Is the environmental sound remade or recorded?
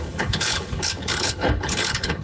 remade